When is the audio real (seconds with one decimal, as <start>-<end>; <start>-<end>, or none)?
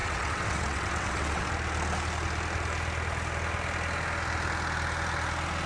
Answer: 1.5-5.7